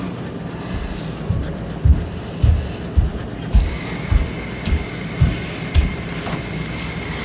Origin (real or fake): real